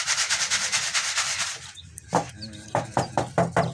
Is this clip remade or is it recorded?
remade